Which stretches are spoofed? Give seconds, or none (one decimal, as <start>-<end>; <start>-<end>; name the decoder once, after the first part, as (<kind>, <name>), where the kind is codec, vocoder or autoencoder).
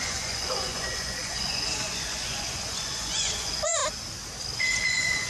0.0-3.8 (vocoder, Vocos); 4.6-5.3